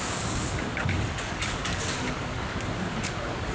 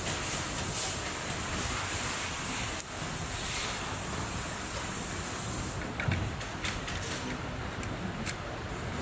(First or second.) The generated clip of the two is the first